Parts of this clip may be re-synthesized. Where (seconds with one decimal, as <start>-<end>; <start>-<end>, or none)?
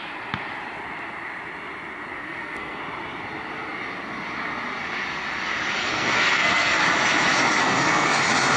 2.1-2.8; 5.8-6.8; 7.6-8.2